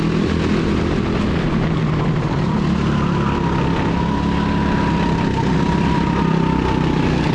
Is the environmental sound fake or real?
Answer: real